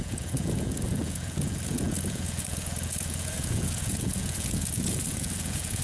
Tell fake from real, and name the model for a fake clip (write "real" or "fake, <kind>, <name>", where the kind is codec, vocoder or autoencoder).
fake, vocoder, Vocos